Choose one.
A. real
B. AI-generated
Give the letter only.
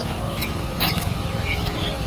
B